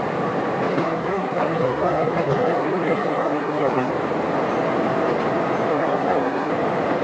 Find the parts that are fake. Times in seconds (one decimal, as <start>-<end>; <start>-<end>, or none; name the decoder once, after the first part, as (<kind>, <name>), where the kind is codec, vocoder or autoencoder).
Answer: 0.7-3.9 (codec, SNAC); 5.7-6.5

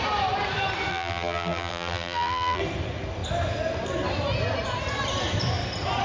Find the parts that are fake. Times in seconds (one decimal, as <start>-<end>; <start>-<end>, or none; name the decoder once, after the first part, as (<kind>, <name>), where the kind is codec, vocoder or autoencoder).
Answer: 0.9-2.6 (vocoder, BigVGAN v2)

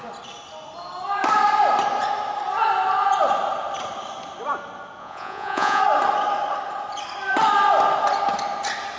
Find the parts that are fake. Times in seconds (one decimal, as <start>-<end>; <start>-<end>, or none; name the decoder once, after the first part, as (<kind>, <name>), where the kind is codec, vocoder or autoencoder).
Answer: 5.0-5.8 (vocoder, Vocos)

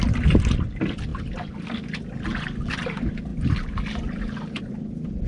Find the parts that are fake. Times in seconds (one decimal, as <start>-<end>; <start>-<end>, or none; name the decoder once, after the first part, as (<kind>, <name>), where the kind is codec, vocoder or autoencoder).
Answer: none

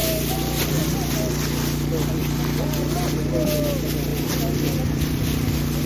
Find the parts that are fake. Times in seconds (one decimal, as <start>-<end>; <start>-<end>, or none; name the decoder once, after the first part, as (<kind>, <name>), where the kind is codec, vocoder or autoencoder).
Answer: 0.0-1.1 (vocoder, BigVGAN v2); 4.1-5.9

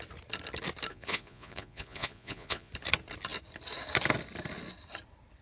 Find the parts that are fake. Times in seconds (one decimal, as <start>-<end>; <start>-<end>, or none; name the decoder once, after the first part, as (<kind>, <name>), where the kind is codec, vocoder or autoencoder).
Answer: 0.9-2.7 (vocoder, Vocos)

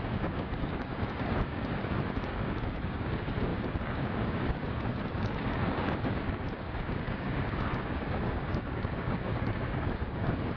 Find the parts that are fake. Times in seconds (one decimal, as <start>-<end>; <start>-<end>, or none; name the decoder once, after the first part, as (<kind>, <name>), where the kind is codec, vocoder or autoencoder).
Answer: 0.0-10.6 (codec, DAC)